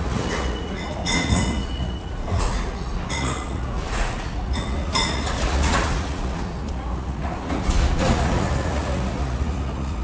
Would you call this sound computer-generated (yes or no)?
yes